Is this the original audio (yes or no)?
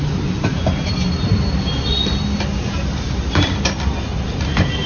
yes